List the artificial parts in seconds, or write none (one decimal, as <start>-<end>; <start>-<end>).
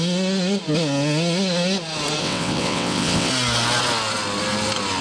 2.2-3.3